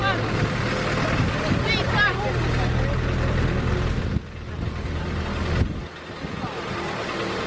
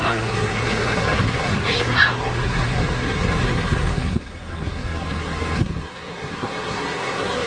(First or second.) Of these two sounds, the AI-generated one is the second